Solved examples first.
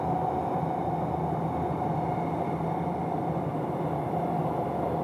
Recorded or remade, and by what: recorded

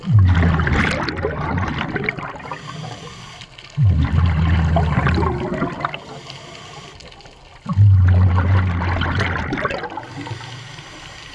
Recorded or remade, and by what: recorded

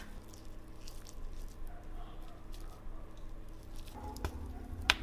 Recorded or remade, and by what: recorded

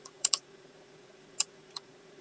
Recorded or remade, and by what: remade, vocoder, Vocos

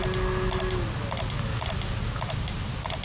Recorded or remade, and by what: recorded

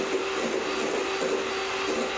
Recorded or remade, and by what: recorded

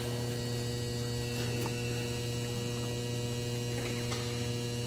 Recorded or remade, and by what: recorded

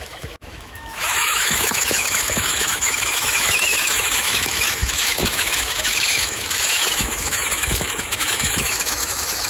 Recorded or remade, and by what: remade, autoencoder, DAC-VAE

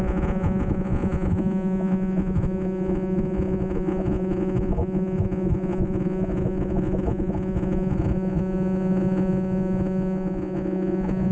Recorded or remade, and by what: remade, vocoder, Vocos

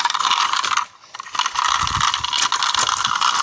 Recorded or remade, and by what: recorded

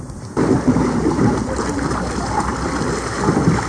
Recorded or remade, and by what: recorded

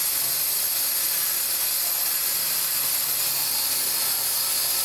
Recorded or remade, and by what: recorded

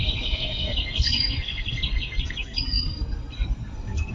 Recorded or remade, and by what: remade, codec, SNAC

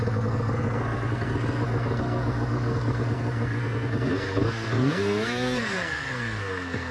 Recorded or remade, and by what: remade, codec, SNAC